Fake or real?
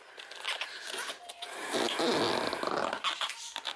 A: real